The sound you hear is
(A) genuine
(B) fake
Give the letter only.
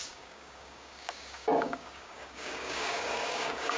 B